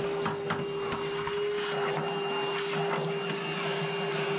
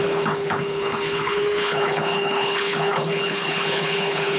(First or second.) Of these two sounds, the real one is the first